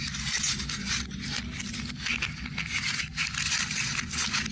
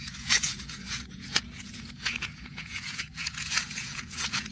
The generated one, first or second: second